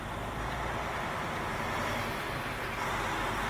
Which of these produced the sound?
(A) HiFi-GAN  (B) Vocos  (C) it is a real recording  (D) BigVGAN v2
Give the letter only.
C